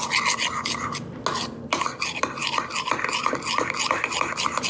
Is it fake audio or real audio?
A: real